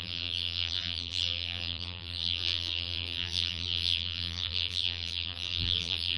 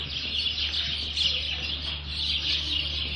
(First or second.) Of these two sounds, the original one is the second